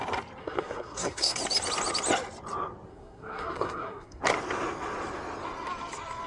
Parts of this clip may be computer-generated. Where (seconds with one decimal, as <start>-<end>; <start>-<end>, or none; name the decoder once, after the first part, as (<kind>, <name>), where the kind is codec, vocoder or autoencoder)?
0.4-1.4 (codec, SNAC); 2.9-4.2